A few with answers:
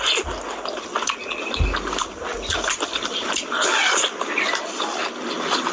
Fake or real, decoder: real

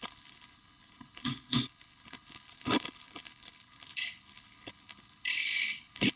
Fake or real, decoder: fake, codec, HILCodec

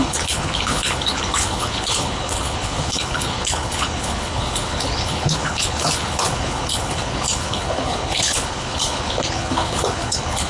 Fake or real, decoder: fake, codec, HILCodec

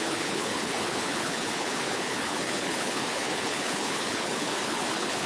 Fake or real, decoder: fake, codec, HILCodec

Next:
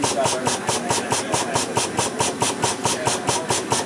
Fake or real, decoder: real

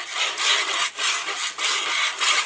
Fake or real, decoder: real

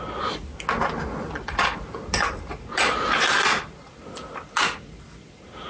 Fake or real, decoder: real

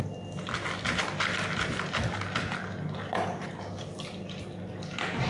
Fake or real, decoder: real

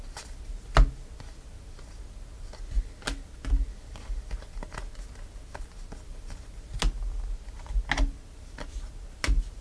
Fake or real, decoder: real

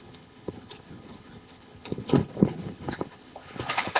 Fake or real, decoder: fake, codec, HILCodec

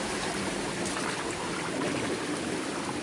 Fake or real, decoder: real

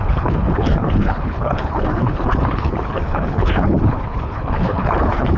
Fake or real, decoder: fake, codec, HILCodec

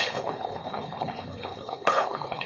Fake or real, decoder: fake, codec, HILCodec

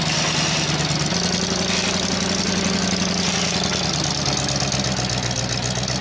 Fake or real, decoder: real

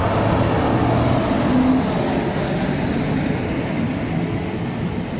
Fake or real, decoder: real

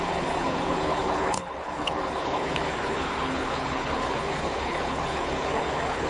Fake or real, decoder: fake, codec, HILCodec